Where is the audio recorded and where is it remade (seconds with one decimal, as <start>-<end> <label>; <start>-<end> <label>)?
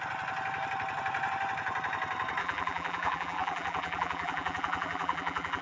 0.0-2.4 recorded; 2.4-5.6 remade